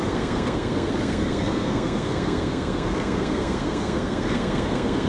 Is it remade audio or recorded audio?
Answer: remade